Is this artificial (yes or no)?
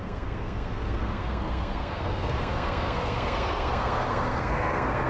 yes